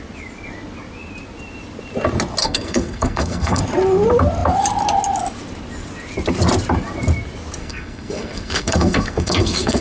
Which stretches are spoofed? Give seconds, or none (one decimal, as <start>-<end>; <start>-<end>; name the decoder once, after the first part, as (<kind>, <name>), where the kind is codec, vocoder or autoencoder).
2.4-3.6 (codec, SNAC); 7.6-9.8